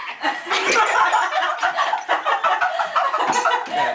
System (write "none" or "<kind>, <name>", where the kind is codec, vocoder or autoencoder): none